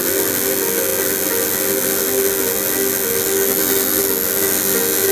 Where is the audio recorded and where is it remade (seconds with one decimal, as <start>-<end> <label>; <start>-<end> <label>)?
0.0-5.1 recorded